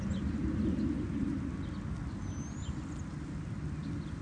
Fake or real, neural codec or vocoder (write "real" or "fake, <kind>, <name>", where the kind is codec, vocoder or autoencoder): real